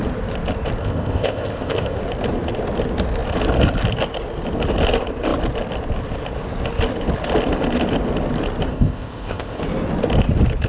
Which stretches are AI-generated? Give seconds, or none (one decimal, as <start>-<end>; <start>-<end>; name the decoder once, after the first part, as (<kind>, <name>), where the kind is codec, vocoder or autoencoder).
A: 0.8-2.0 (codec, ZipCodec); 8.7-9.6